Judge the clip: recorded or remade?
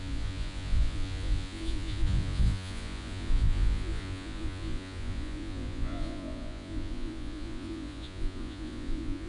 remade